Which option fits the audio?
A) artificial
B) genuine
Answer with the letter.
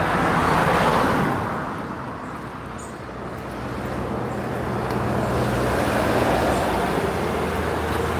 B